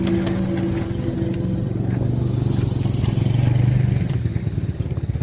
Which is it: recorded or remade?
recorded